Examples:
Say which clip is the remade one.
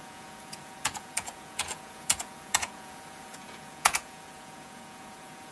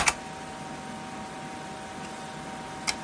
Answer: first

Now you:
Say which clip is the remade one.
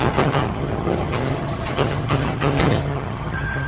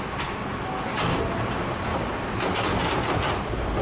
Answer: first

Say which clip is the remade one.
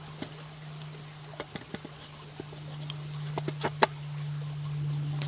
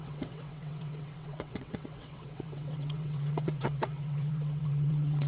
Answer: second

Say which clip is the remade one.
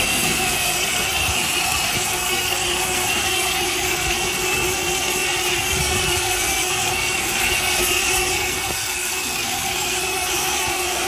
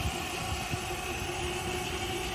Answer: first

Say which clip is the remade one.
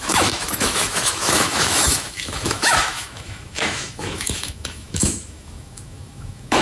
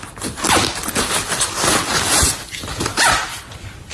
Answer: first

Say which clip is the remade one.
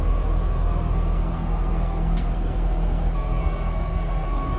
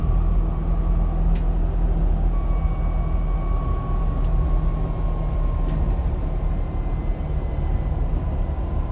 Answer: first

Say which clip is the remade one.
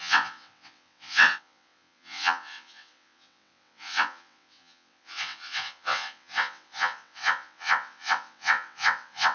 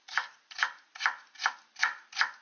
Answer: first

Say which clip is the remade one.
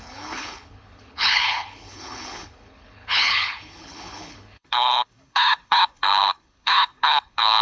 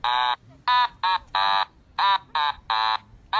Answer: first